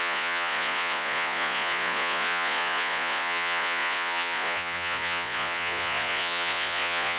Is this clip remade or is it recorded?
remade